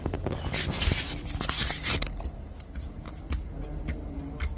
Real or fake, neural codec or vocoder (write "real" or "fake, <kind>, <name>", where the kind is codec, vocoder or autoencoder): real